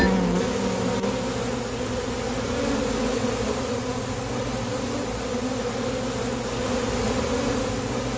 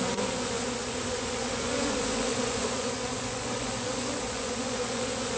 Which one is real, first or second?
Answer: first